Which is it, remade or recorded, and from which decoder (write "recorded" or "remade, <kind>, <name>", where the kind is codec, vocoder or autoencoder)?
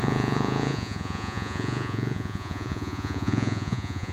remade, vocoder, Vocos